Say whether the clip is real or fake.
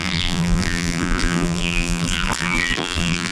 fake